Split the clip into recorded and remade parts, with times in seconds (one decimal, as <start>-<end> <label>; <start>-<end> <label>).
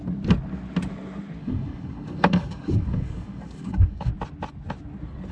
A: 0.0-1.4 recorded; 1.4-4.1 remade; 4.1-5.3 recorded